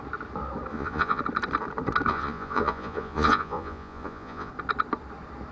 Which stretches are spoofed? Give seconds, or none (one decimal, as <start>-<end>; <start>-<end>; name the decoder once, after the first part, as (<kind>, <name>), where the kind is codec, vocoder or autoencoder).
0.7-1.2 (vocoder, Vocos); 2.1-4.5